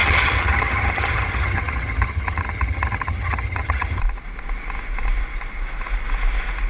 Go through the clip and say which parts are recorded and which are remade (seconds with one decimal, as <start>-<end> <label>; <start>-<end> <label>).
0.0-4.0 remade; 4.0-6.7 recorded

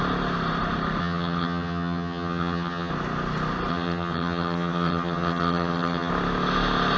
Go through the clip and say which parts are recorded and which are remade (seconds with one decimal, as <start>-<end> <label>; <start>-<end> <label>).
0.0-1.0 recorded; 1.0-2.9 remade; 2.9-3.7 recorded; 3.7-6.1 remade; 6.1-7.0 recorded

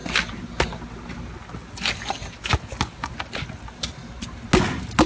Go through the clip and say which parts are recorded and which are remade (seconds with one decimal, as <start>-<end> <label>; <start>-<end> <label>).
0.0-5.1 recorded

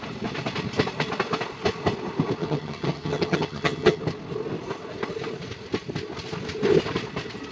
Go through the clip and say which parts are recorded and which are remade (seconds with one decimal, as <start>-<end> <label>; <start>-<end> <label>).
0.0-2.4 recorded; 2.4-4.0 remade; 4.0-7.5 recorded

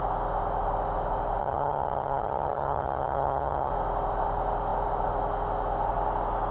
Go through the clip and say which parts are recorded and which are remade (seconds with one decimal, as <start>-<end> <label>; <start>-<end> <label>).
0.0-1.4 recorded; 1.4-3.7 remade; 3.7-6.5 recorded

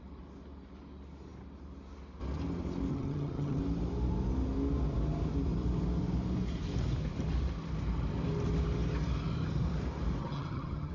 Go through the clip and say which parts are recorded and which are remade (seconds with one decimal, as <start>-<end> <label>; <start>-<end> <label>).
0.0-2.9 recorded; 2.9-3.6 remade; 3.6-10.2 recorded; 10.2-10.9 remade

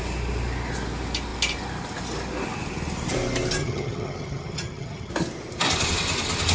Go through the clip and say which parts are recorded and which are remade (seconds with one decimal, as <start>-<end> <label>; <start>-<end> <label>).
0.0-3.6 recorded; 3.6-5.1 remade; 5.1-6.5 recorded

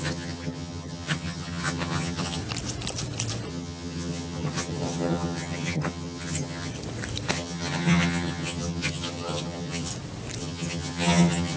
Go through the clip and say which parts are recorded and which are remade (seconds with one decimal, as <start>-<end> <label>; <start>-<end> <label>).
0.0-2.4 remade; 2.4-3.5 recorded; 3.5-6.7 remade; 6.7-7.3 recorded; 7.3-9.9 remade; 9.9-10.4 recorded; 10.4-11.6 remade